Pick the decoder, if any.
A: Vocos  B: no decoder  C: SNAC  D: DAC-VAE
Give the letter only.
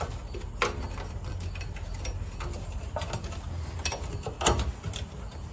B